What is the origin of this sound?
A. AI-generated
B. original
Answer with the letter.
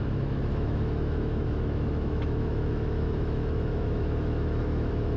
A